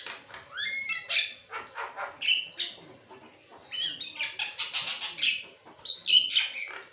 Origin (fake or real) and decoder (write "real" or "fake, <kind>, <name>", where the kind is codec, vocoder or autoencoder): real